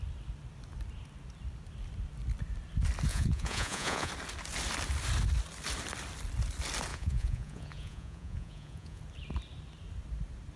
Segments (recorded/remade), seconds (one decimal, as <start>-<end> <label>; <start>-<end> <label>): 0.0-3.1 recorded; 3.1-4.1 remade; 4.1-6.9 recorded; 6.9-9.0 remade; 9.0-10.6 recorded